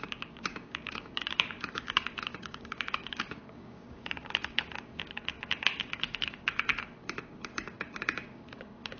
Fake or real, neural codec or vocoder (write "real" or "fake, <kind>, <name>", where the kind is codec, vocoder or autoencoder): fake, codec, DAC